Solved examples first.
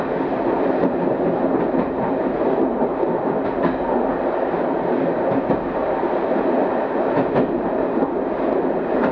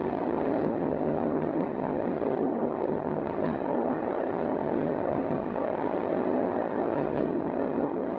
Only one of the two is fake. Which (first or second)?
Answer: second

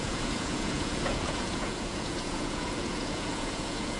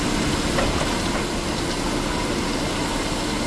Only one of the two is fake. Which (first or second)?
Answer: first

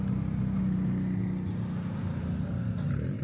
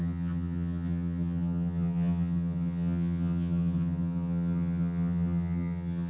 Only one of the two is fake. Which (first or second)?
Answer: second